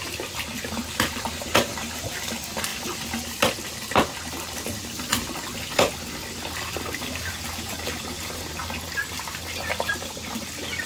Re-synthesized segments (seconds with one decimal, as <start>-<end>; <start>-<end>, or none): none